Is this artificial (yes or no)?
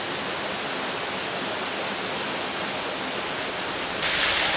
no